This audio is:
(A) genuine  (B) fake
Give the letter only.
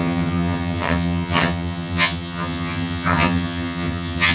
B